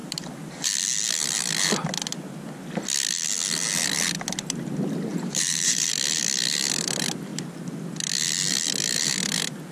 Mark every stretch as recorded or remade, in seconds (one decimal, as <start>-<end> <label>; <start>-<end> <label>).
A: 0.0-0.7 remade; 0.7-5.1 recorded; 5.1-5.9 remade; 5.9-9.7 recorded